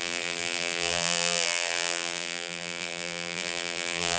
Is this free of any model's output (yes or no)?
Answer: no